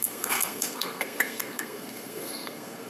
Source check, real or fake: fake